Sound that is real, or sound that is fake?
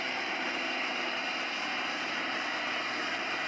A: fake